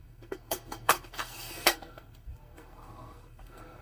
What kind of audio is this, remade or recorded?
remade